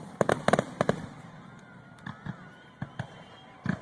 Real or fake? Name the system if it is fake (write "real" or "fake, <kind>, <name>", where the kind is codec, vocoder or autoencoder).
real